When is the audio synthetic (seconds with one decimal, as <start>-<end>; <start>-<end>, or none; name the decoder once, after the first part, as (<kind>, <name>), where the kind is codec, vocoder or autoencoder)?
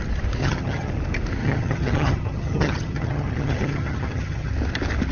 0.4-0.9 (vocoder, HiFi-GAN); 1.4-4.5